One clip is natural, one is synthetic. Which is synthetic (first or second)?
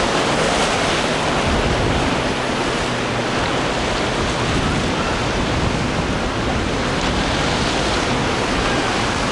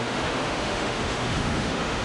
second